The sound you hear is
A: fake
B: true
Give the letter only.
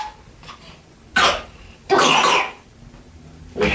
B